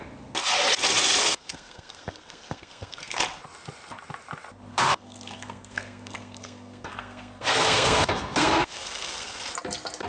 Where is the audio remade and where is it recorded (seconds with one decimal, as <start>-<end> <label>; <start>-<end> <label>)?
0.0-1.2 recorded; 1.2-3.2 remade; 3.2-4.7 recorded; 4.7-9.4 remade; 9.4-10.1 recorded